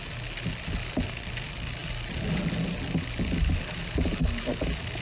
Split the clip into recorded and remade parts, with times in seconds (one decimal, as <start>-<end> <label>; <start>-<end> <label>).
0.0-5.0 recorded